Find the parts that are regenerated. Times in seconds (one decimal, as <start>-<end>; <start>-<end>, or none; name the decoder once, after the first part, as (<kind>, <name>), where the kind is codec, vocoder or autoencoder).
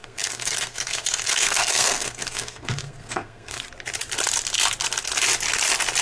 0.0-3.6 (codec, SNAC)